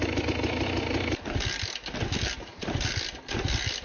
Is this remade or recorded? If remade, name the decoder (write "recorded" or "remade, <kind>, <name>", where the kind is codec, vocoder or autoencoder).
recorded